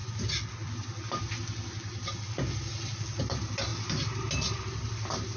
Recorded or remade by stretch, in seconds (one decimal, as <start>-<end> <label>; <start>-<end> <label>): 0.0-5.4 recorded